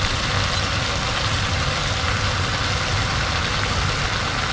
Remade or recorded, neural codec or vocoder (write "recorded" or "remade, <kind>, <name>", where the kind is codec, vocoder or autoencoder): recorded